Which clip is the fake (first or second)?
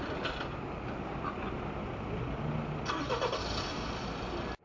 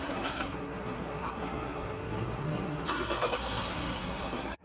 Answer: second